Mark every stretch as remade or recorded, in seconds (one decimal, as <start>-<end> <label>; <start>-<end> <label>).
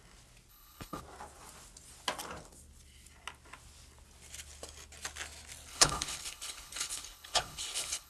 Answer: 0.0-0.5 recorded; 0.5-1.0 remade; 1.0-5.7 recorded; 5.7-8.1 remade